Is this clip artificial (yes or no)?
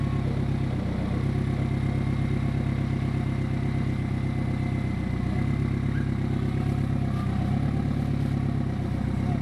no